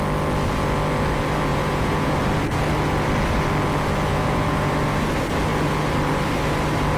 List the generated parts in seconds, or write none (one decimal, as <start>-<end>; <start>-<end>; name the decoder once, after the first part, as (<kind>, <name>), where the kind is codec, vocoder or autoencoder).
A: 1.5-2.2 (vocoder, Vocos); 4.1-4.7